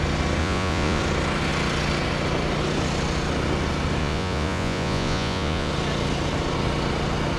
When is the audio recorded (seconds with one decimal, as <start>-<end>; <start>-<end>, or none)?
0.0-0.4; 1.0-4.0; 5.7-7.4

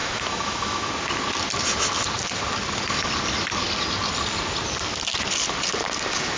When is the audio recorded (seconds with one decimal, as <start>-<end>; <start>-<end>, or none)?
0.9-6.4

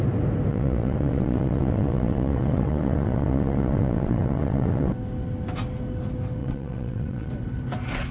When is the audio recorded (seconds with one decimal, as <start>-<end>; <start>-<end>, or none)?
0.0-0.5; 4.9-6.4; 7.3-8.1

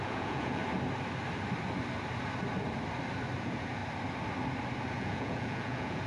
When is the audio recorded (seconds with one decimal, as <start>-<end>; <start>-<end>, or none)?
0.6-3.4; 3.8-4.9

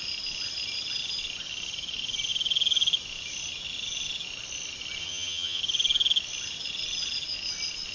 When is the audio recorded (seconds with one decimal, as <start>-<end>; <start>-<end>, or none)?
0.0-5.0; 5.6-7.9

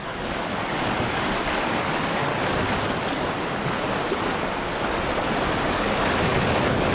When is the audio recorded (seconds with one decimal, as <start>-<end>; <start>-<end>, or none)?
2.3-5.7